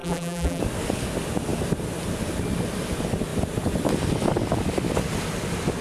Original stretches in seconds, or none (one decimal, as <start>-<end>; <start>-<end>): 0.6-5.8